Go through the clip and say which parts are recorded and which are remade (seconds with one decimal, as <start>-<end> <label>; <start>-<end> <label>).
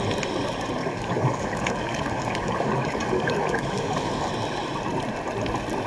0.0-0.8 recorded; 0.8-4.3 remade; 4.3-5.9 recorded